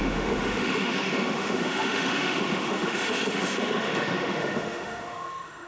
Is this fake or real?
fake